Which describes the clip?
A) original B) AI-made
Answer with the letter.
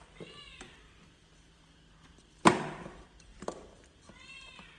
B